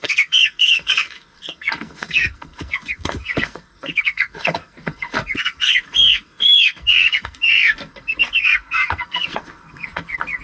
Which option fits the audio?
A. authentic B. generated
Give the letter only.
B